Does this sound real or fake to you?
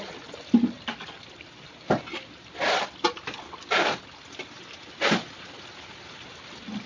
real